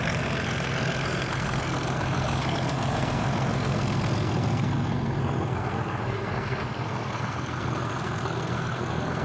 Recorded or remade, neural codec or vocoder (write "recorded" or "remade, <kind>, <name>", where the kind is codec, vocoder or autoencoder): remade, codec, SNAC